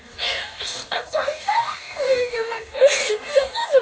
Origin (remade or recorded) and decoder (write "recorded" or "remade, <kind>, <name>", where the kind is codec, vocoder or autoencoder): remade, codec, DAC